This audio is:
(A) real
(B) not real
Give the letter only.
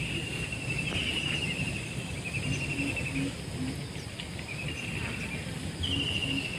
A